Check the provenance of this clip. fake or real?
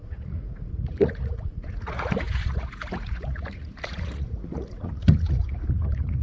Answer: fake